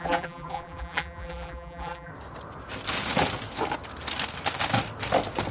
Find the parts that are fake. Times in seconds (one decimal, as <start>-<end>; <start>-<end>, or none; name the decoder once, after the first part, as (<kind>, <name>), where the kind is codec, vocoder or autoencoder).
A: 0.0-2.1 (vocoder, BigVGAN v2)